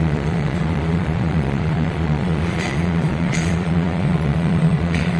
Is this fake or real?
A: fake